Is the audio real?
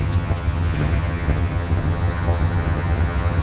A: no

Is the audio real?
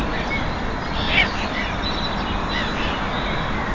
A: yes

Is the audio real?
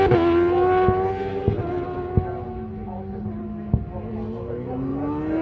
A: yes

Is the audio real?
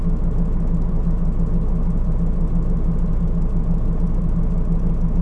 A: yes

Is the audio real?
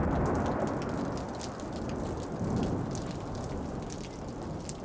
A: yes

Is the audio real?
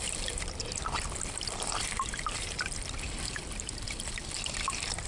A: no